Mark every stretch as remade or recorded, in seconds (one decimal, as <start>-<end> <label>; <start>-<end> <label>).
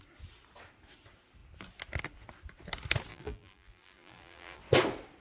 0.0-3.1 recorded; 3.1-4.6 remade; 4.6-5.2 recorded